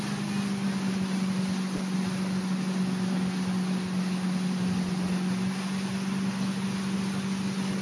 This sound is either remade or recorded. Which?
recorded